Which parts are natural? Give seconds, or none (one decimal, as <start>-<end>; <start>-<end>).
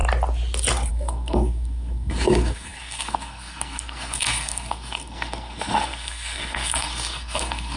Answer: 0.0-0.9